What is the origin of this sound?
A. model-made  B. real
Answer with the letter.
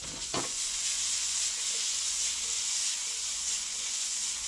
A